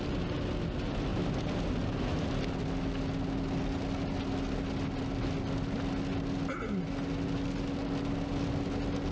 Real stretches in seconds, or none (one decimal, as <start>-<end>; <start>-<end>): 0.0-9.1